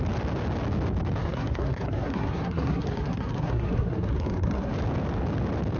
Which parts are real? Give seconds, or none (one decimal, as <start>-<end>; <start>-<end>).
0.0-1.2; 4.7-5.8